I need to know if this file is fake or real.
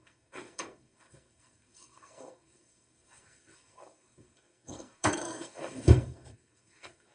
fake